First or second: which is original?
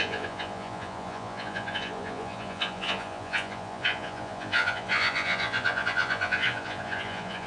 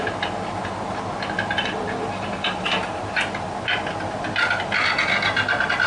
second